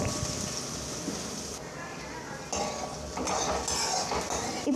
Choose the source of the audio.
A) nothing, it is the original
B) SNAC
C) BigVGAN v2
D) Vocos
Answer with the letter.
A